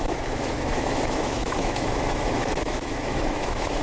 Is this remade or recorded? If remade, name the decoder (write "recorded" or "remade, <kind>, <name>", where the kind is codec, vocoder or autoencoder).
remade, autoencoder, DAC-VAE